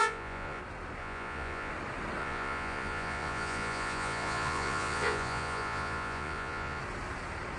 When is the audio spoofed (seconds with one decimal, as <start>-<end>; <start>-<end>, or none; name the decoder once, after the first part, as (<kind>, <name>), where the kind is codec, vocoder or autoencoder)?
0.0-0.6 (vocoder, Vocos); 1.0-1.7; 2.2-6.8